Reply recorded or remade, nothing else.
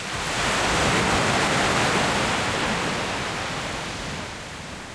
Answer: recorded